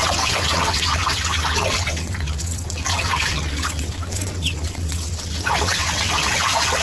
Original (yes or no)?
no